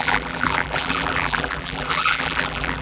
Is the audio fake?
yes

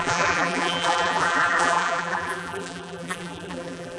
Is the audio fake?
yes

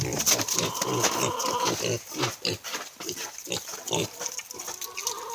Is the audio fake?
no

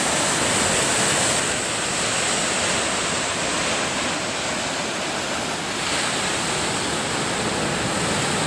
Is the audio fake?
no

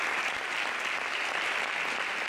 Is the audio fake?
no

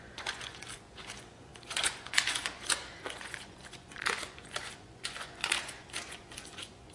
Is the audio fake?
yes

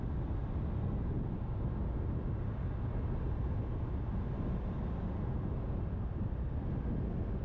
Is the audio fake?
no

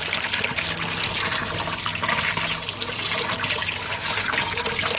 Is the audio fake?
no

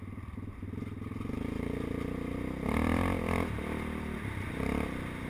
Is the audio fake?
yes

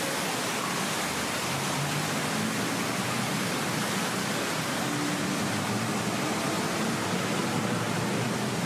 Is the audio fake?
no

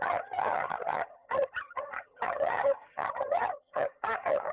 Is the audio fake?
yes